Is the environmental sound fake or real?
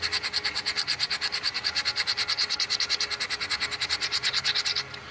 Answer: real